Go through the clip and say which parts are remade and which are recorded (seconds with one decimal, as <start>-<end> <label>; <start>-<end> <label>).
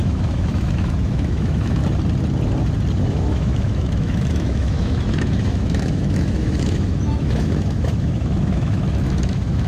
0.0-1.8 remade; 1.8-3.0 recorded; 3.0-9.7 remade